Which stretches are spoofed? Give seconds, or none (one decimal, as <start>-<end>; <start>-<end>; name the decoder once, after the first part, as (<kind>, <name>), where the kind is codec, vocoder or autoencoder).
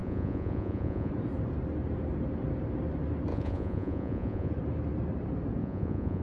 0.0-1.1 (vocoder, Vocos); 3.3-4.5; 5.6-6.2